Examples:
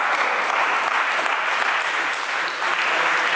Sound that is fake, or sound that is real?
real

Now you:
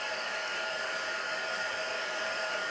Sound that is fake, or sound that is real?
fake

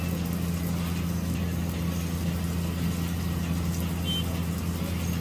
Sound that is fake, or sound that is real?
real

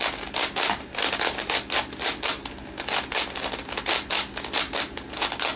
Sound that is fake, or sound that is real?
real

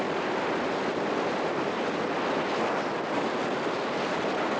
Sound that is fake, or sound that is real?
real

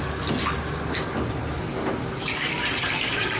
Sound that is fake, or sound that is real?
real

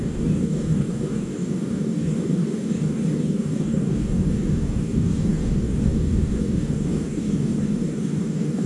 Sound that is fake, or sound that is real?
fake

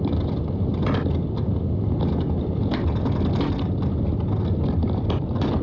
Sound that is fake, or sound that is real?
real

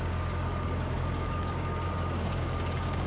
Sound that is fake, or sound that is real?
fake